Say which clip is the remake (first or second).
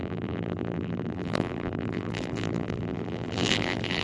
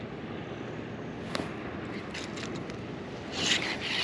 first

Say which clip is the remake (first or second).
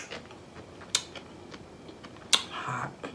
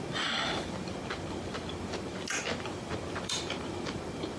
second